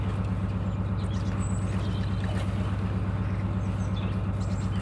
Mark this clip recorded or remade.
recorded